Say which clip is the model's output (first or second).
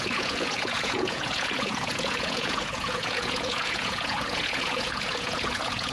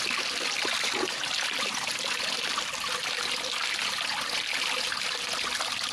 first